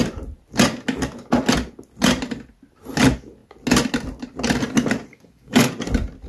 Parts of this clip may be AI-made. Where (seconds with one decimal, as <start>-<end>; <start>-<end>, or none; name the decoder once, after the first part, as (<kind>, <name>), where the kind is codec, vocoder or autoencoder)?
5.1-5.7 (codec, DAC)